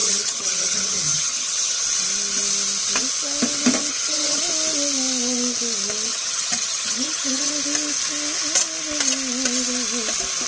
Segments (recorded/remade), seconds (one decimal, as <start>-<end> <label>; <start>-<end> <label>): 0.0-1.8 remade; 1.8-3.9 recorded; 3.9-4.4 remade; 4.4-6.1 recorded; 6.1-7.5 remade; 7.5-10.5 recorded